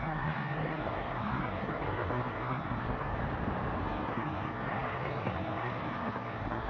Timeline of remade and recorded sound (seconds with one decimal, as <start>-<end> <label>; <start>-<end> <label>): 0.0-3.2 remade; 3.2-3.8 recorded; 3.8-6.7 remade